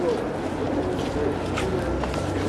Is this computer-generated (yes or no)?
no